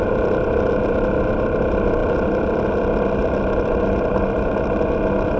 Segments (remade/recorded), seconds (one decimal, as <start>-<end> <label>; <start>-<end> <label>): 0.0-5.4 recorded